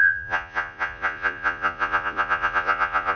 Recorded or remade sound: remade